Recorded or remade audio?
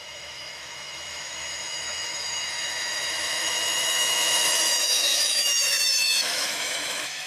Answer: remade